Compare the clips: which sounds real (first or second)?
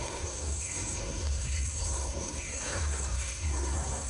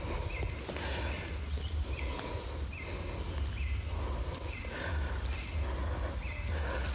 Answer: second